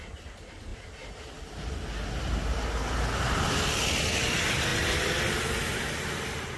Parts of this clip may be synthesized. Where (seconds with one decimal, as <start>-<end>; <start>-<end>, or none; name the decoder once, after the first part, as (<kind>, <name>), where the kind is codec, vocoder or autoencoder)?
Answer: none